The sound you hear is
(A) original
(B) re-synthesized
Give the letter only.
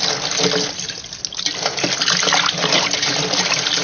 A